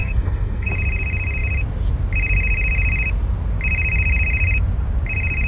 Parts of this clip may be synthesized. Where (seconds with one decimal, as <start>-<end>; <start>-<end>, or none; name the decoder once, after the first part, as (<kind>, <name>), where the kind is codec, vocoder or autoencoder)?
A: 0.0-0.7 (codec, SNAC)